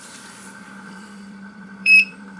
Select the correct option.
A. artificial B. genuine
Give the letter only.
A